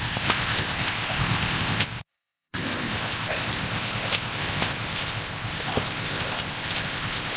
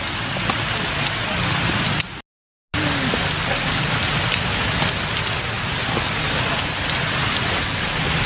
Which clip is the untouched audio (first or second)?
second